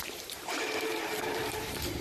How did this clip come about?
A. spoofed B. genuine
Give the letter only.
A